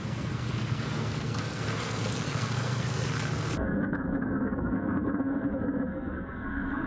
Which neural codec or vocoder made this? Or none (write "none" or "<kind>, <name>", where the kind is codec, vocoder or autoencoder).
codec, SNAC